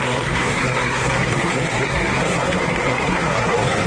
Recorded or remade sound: remade